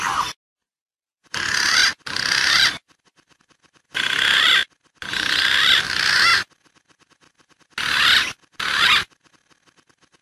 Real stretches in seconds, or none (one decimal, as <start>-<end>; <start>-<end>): 0.0-1.8; 3.5-10.2